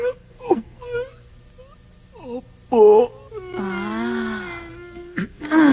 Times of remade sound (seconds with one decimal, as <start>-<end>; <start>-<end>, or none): 0.0-1.3; 4.7-5.7